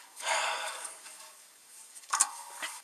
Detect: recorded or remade remade